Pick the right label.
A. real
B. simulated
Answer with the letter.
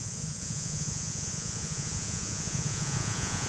B